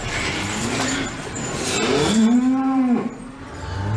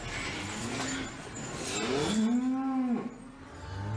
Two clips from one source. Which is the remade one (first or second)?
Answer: first